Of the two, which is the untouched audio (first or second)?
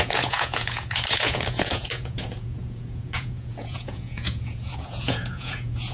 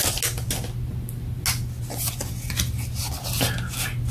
second